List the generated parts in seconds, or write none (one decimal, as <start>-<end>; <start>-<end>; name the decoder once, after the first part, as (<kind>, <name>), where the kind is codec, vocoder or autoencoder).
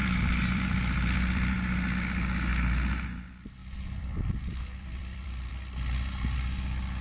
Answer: 0.0-1.5 (vocoder, BigVGAN v2); 3.6-5.5